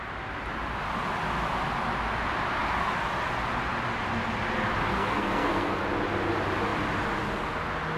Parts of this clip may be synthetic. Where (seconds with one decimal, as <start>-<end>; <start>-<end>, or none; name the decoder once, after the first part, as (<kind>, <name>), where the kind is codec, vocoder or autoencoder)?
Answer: 4.9-5.8 (codec, SNAC)